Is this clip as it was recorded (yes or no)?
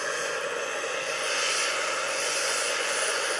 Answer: no